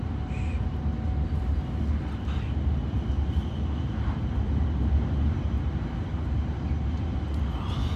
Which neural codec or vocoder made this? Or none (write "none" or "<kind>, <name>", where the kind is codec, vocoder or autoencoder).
none